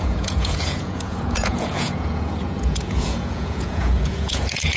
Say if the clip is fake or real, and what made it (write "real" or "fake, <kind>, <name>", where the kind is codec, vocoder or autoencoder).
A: fake, vocoder, Vocos